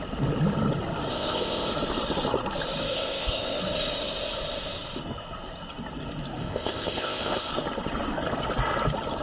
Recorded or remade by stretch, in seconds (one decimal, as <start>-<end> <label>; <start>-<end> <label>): 0.0-1.1 recorded; 1.1-1.7 remade; 1.7-2.9 recorded; 2.9-3.6 remade; 3.6-6.4 recorded; 6.4-7.5 remade; 7.5-9.2 recorded